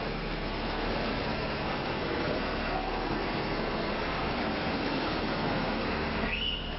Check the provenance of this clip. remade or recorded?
remade